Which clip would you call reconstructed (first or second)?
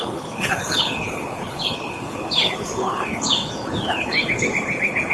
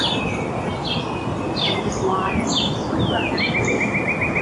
first